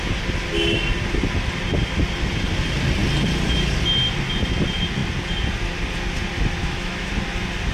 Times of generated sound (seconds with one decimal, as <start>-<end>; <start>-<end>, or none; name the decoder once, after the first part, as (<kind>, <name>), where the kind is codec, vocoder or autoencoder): 6.6-7.1 (autoencoder, DAC-VAE)